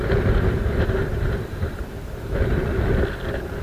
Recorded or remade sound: remade